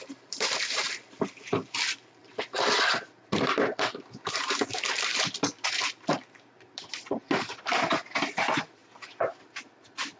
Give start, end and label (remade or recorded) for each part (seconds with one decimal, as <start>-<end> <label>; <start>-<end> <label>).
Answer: 0.0-7.2 remade; 7.2-7.9 recorded; 7.9-8.8 remade; 8.8-9.4 recorded; 9.4-10.2 remade